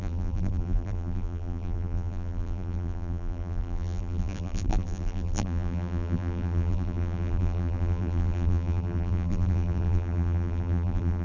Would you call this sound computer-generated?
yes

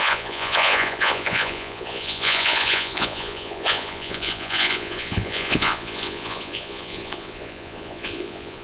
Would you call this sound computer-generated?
yes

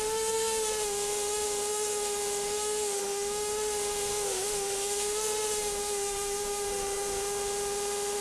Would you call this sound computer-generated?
yes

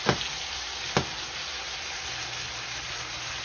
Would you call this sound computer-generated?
no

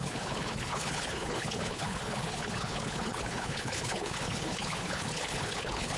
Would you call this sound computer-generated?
yes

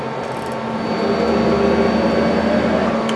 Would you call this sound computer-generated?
no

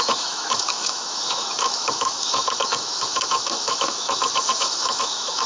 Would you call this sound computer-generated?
yes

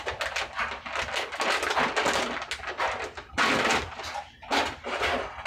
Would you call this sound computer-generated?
no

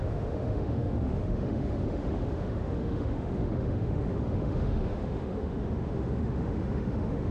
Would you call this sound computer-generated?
yes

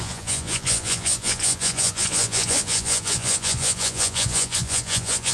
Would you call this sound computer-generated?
yes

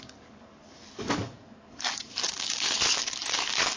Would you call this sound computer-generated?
yes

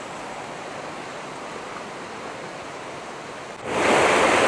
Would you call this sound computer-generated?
no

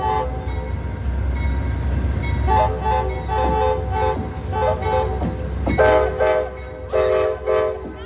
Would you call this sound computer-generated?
no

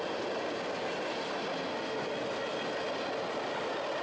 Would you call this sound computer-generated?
no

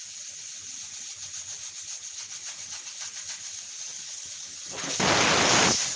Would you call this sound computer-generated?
no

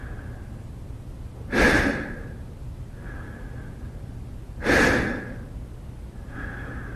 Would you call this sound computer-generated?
no